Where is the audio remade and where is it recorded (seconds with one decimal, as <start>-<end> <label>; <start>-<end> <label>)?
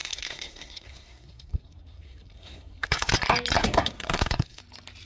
0.0-3.1 remade; 3.1-3.6 recorded; 3.6-4.6 remade; 4.6-5.1 recorded